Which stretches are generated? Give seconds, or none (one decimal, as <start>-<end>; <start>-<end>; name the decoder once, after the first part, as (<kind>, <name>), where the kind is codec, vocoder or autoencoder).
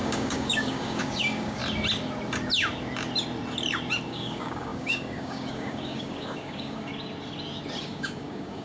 0.0-1.6 (codec, DAC); 4.1-6.9; 7.8-8.6